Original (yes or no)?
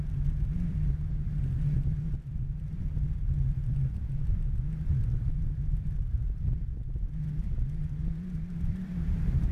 yes